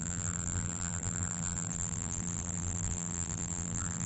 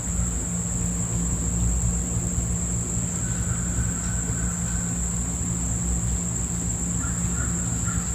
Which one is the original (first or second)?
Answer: second